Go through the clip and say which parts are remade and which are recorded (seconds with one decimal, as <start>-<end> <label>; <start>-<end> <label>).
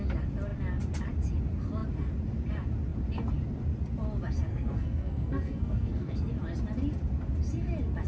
0.0-4.5 recorded; 4.5-6.3 remade; 6.3-8.1 recorded